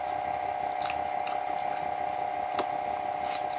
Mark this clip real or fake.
real